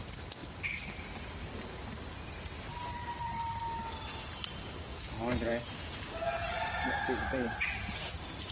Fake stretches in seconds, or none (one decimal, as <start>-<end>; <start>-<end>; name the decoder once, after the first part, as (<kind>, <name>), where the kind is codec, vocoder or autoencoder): 0.4-1.9 (vocoder, BigVGAN v2); 2.7-3.6